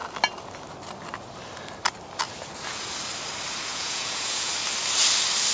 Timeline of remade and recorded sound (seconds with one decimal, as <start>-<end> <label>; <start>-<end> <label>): 0.0-3.7 recorded; 3.7-4.5 remade; 4.5-5.5 recorded